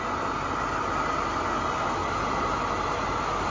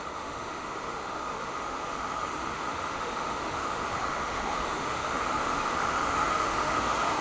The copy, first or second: second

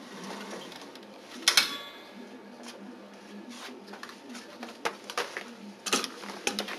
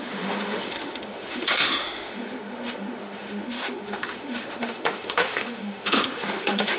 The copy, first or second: second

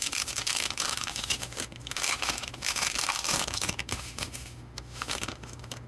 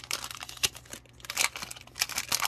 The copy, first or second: first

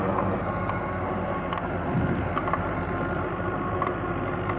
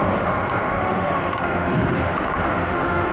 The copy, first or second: second